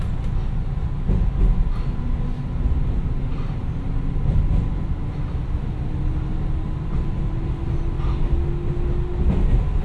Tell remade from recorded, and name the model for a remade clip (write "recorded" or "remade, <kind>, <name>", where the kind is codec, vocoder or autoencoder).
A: recorded